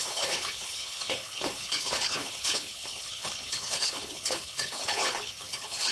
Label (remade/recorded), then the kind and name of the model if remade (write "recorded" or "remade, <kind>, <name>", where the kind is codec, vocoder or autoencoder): remade, codec, HILCodec